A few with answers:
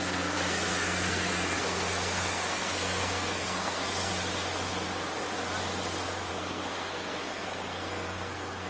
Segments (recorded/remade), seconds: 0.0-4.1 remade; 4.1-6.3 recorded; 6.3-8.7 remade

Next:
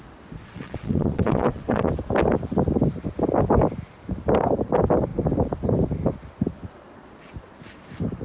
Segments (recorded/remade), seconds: 0.0-0.4 recorded; 0.4-1.9 remade; 1.9-8.2 recorded

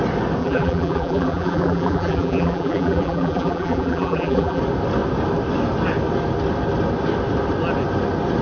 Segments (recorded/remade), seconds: 0.0-0.4 recorded; 0.4-4.6 remade; 4.6-8.4 recorded

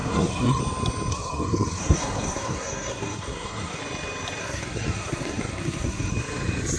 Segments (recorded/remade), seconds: 0.0-0.6 remade; 0.6-1.1 recorded; 1.1-3.8 remade; 3.8-4.4 recorded; 4.4-6.1 remade; 6.1-6.8 recorded